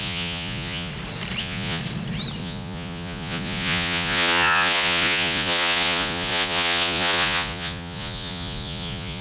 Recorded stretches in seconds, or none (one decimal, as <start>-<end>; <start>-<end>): 0.9-1.4; 1.8-2.4